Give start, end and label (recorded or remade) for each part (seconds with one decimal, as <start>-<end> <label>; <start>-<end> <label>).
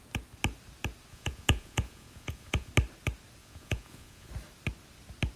0.0-1.1 recorded; 1.1-2.7 remade; 2.7-3.4 recorded; 3.4-4.3 remade; 4.3-5.4 recorded